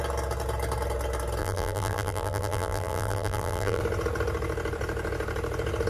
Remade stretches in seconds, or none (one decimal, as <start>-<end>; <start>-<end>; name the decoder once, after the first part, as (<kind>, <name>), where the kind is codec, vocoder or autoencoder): 1.4-3.8 (vocoder, BigVGAN v2)